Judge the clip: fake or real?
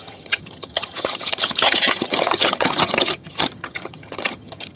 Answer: fake